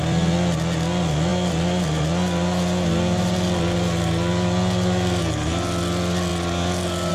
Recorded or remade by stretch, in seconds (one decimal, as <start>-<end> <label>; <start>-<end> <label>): 0.0-7.1 recorded